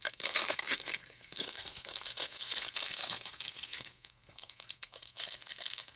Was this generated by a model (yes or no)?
yes